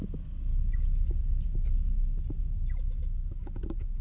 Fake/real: real